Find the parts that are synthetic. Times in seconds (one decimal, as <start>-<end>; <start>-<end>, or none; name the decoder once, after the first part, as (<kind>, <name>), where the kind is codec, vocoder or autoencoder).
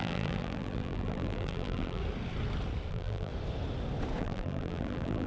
0.0-2.0 (vocoder, BigVGAN v2); 2.9-3.3; 4.2-5.3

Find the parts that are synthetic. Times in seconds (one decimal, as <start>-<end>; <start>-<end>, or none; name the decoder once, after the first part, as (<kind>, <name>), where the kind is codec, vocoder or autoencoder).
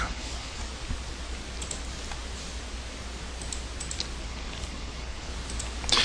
0.0-0.6 (codec, HILCodec); 4.2-5.3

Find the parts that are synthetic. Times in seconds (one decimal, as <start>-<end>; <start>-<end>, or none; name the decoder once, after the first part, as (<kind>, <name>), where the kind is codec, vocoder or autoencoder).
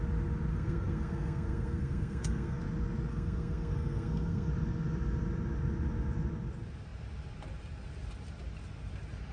0.5-2.6 (codec, SNAC); 3.1-4.5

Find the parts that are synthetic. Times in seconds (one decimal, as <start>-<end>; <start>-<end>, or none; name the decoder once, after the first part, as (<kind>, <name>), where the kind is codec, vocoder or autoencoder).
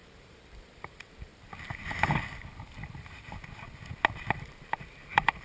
0.0-1.3 (vocoder, BigVGAN v2); 4.4-5.4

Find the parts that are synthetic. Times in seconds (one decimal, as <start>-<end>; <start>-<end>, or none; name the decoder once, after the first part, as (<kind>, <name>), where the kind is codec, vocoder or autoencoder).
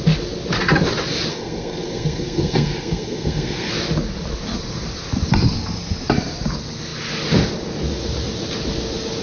1.3-3.7 (codec, SNAC)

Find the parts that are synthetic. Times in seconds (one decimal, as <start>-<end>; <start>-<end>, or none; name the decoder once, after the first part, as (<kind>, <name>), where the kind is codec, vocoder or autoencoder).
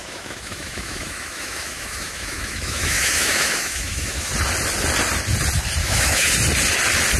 0.0-4.3 (autoencoder, DAC-VAE); 5.8-6.3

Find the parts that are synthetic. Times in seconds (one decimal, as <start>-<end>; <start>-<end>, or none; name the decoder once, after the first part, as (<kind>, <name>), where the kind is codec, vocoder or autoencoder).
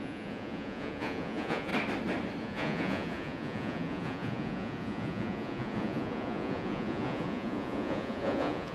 0.0-1.7 (vocoder, Vocos); 2.4-8.7